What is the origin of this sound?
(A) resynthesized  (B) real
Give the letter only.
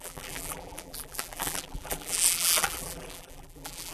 A